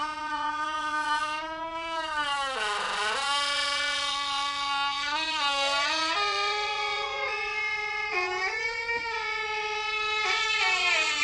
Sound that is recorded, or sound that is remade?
remade